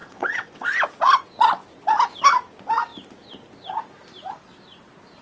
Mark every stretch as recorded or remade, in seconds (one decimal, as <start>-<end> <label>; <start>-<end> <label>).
0.0-0.7 remade; 0.7-5.2 recorded